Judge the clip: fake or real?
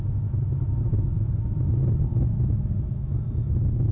real